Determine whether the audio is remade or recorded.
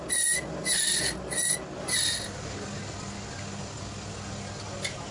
recorded